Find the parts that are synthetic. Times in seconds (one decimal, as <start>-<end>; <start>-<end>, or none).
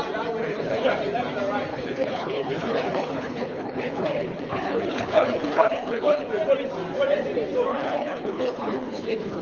0.4-0.9; 1.7-6.3; 7.7-9.4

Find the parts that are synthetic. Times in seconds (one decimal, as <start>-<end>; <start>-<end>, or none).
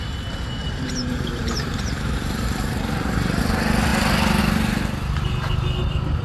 0.6-3.4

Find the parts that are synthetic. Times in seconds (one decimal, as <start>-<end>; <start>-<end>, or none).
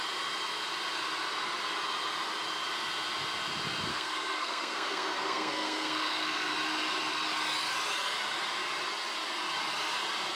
3.9-6.5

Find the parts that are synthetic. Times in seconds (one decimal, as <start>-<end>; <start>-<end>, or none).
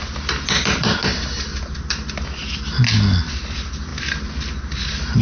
0.0-1.0; 1.9-2.4; 3.3-3.9; 4.5-5.2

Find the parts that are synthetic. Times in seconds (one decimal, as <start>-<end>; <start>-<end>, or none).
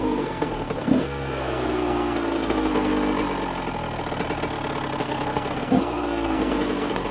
0.0-2.9; 5.0-7.1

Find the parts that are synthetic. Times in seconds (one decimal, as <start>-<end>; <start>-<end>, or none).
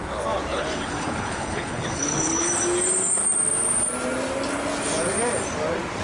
0.5-2.5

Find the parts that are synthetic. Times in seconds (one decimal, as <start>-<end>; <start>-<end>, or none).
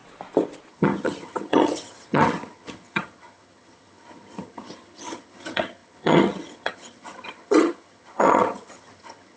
0.7-9.4